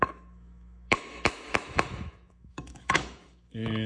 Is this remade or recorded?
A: remade